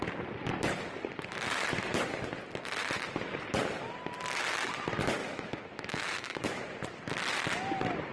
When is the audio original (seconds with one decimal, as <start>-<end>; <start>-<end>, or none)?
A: 0.0-5.2; 6.6-8.1